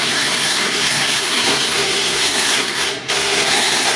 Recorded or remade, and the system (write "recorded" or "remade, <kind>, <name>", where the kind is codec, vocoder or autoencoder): remade, codec, SNAC